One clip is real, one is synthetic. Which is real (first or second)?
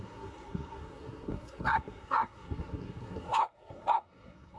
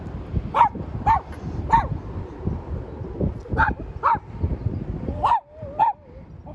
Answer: second